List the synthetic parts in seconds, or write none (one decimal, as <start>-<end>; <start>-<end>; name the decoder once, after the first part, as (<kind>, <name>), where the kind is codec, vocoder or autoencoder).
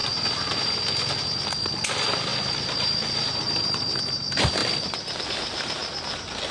none